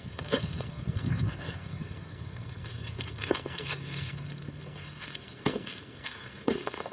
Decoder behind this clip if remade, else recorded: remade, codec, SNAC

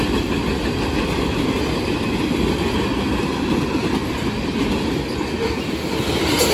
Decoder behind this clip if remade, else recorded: recorded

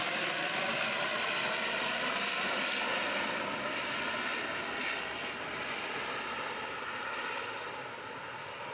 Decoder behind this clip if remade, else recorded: recorded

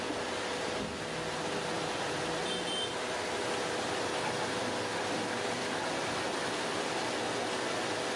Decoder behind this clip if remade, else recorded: recorded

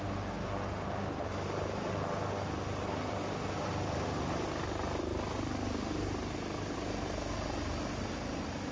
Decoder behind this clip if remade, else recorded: recorded